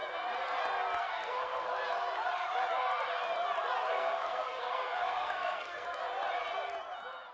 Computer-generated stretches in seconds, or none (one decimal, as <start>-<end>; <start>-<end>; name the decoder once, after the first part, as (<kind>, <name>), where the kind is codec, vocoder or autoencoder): 1.0-1.7 (codec, SNAC); 3.9-6.0